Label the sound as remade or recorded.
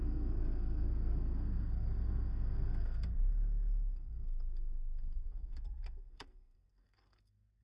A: remade